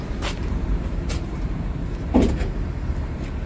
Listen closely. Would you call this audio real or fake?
fake